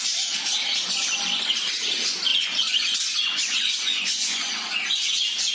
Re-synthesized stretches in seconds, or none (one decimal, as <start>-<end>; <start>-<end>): 2.3-4.5